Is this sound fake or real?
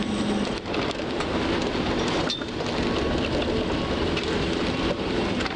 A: real